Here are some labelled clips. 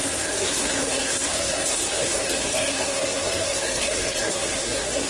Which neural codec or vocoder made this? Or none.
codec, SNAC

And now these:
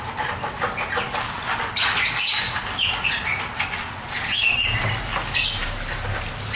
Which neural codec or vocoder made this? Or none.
none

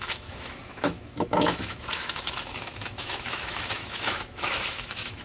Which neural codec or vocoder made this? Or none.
autoencoder, DAC-VAE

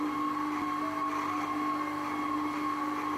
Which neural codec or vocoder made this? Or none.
none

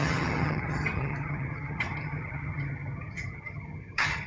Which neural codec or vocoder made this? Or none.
vocoder, HiFi-GAN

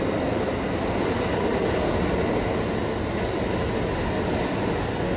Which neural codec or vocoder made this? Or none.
none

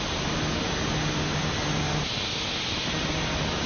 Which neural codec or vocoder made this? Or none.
none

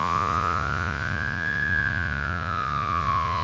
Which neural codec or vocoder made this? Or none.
vocoder, Vocos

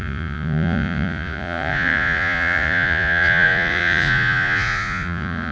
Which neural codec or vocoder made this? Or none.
vocoder, Vocos